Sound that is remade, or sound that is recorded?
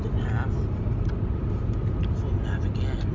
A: recorded